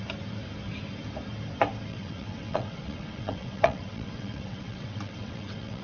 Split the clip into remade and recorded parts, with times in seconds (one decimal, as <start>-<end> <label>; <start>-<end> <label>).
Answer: 0.0-1.9 recorded; 1.9-5.8 remade